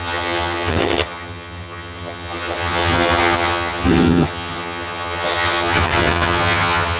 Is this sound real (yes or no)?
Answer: no